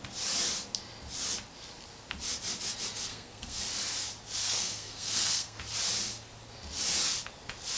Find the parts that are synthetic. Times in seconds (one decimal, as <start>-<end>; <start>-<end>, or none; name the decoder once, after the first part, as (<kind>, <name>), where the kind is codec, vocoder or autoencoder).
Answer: 3.1-3.6 (codec, SNAC); 4.4-5.6